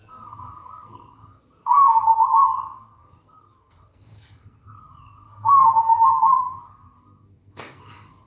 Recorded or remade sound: remade